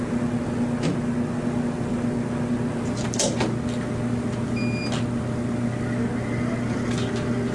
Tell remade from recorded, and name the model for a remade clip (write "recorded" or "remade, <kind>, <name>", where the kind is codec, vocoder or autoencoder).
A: recorded